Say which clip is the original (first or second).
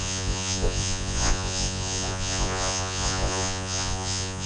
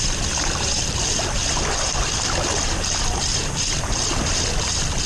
second